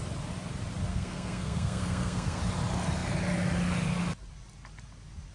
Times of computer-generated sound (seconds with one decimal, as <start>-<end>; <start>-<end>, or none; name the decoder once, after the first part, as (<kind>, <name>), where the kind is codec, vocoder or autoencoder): 0.9-2.4 (codec, SNAC)